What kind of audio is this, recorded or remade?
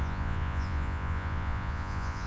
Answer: remade